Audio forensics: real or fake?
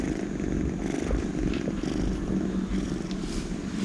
real